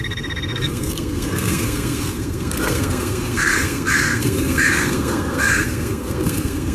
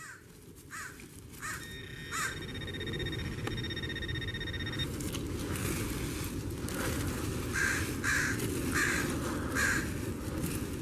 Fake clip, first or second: first